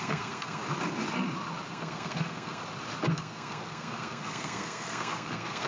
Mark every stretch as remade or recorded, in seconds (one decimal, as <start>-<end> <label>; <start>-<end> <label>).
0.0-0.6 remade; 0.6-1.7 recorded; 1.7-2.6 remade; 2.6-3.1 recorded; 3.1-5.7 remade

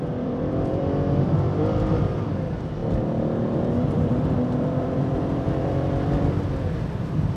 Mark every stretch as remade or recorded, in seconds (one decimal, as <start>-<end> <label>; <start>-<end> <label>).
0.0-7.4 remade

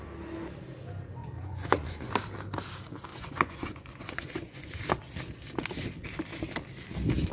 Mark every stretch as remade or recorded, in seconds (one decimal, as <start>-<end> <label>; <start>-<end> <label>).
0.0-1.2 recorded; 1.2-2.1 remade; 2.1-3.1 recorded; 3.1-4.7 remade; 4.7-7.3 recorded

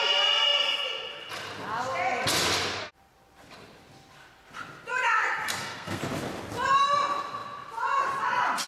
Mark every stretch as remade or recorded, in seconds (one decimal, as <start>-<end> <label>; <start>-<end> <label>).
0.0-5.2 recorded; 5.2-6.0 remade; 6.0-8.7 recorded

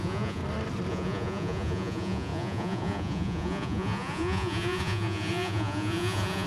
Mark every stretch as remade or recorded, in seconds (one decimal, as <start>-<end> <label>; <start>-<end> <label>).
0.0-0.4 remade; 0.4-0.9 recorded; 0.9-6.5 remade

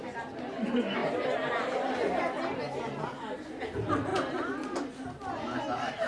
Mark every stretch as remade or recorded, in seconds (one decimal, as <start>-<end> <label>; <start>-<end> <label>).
0.0-6.1 recorded

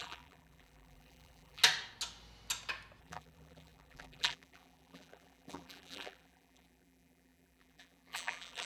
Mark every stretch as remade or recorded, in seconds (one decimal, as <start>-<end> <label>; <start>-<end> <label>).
0.0-1.6 remade; 1.6-3.0 recorded; 3.0-8.7 remade